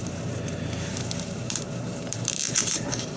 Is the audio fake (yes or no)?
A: yes